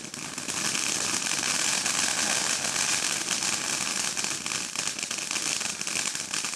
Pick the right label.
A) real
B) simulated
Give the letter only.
A